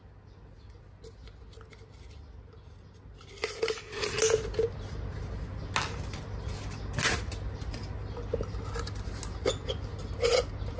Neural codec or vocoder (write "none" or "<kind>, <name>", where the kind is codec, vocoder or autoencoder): none